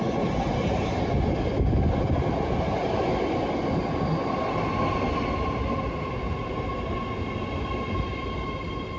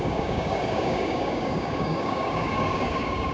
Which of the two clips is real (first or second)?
first